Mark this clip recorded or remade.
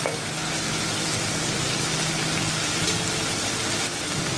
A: recorded